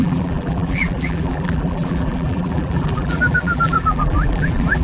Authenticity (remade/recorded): remade